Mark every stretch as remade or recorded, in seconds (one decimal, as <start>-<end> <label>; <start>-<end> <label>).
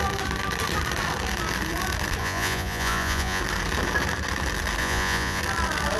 0.0-2.2 recorded; 2.2-3.4 remade; 3.4-4.8 recorded; 4.8-5.4 remade; 5.4-6.0 recorded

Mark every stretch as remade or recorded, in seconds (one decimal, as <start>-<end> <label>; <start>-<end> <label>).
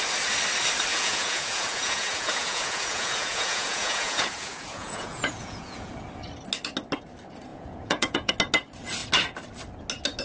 0.0-0.9 recorded; 0.9-5.9 remade; 5.9-7.5 recorded; 7.5-8.3 remade; 8.3-10.2 recorded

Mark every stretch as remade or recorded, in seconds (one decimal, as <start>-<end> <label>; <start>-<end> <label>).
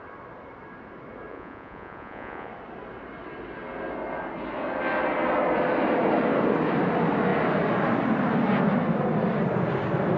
0.0-1.3 recorded; 1.3-2.5 remade; 2.5-10.2 recorded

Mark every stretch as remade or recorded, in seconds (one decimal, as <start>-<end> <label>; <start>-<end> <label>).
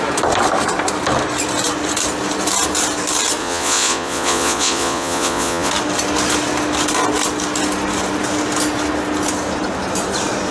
0.0-3.4 recorded; 3.4-5.7 remade; 5.7-10.5 recorded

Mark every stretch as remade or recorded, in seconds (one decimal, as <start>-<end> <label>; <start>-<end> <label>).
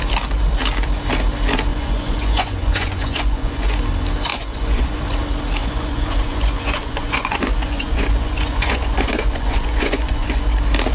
0.0-1.7 recorded; 1.7-3.8 remade; 3.8-4.3 recorded; 4.3-5.0 remade; 5.0-5.6 recorded; 5.6-10.4 remade; 10.4-10.9 recorded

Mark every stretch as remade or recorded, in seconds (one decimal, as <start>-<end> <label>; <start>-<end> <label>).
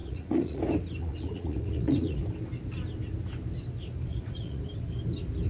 0.0-0.6 remade; 0.6-1.0 recorded; 1.0-2.2 remade; 2.2-4.1 recorded; 4.1-4.6 remade; 4.6-5.5 recorded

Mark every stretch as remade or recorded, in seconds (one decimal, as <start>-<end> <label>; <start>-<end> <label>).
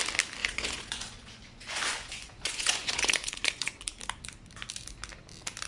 0.0-0.4 recorded; 0.4-3.8 remade; 3.8-5.7 recorded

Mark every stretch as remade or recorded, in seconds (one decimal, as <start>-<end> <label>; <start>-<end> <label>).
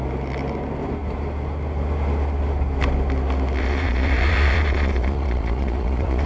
0.0-3.6 recorded; 3.6-6.3 remade